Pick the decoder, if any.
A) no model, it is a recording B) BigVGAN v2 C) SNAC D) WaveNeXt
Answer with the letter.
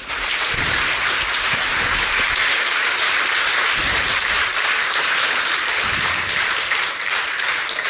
B